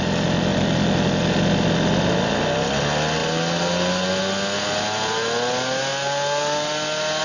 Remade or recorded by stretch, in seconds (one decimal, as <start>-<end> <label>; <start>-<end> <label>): 0.0-7.2 recorded